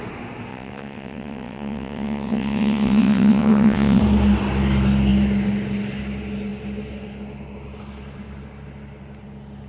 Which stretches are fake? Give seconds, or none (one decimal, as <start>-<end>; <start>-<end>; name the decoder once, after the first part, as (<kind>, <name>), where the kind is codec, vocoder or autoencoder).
0.5-4.0 (vocoder, WaveNeXt)